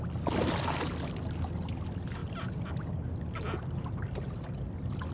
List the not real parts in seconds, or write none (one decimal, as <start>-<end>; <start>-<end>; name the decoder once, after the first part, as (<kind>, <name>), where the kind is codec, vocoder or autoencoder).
none